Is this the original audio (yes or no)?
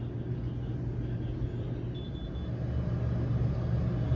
yes